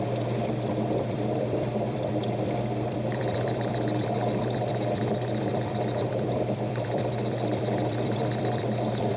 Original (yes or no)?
no